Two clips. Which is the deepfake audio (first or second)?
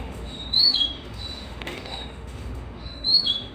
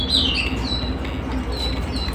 first